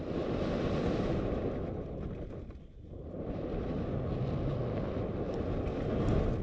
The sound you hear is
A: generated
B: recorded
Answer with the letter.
B